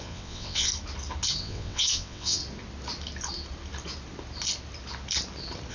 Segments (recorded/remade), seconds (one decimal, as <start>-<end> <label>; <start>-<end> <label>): 0.0-0.7 remade; 0.7-1.4 recorded; 1.4-2.4 remade; 2.4-5.7 recorded